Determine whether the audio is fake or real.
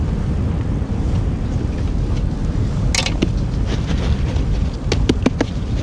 real